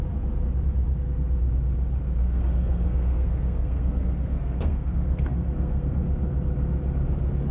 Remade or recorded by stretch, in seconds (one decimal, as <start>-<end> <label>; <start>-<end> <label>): 0.0-2.2 recorded; 2.2-6.0 remade; 6.0-7.5 recorded